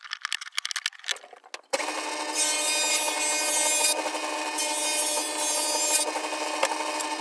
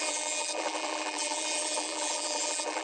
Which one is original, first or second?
first